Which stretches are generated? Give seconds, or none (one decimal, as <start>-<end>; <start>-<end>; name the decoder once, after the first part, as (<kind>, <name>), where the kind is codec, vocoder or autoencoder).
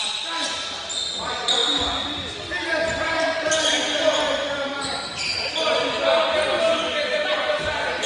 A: 0.0-1.6 (vocoder, BigVGAN v2); 2.7-5.3; 6.6-8.1